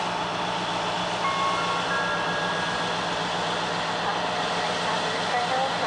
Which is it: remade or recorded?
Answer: recorded